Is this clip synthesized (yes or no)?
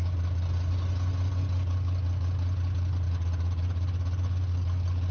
no